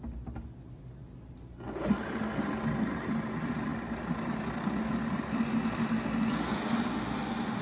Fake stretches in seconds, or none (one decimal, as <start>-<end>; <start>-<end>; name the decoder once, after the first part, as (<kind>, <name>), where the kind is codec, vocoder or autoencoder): none